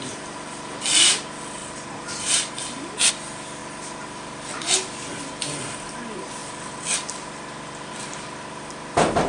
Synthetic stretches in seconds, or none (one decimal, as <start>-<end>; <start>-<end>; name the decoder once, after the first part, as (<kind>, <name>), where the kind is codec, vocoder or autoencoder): none